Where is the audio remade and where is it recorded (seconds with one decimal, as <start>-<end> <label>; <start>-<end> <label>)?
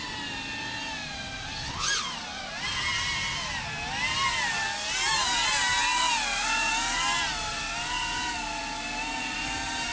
0.0-9.9 recorded